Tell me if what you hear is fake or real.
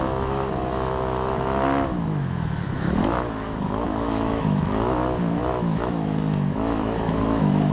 fake